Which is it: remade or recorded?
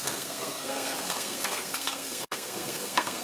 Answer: remade